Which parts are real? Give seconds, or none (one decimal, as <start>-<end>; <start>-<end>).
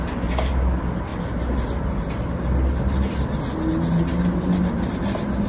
0.0-5.5